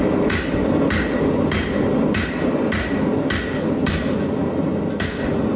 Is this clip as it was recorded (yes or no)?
yes